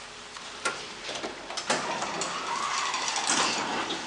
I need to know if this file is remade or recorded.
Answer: recorded